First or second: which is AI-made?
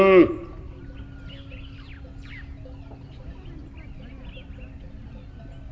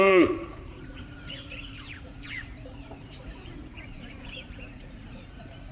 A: second